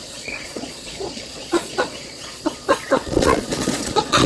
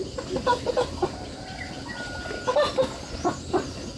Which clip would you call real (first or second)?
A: second